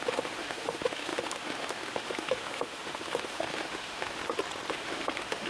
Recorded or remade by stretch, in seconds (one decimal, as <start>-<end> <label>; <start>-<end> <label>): 0.0-4.2 remade; 4.2-4.7 recorded; 4.7-5.5 remade